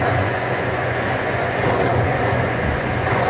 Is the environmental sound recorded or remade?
remade